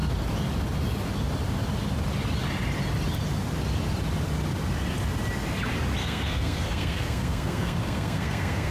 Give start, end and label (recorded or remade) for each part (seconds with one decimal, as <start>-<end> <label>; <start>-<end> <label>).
0.0-6.0 recorded; 6.0-8.7 remade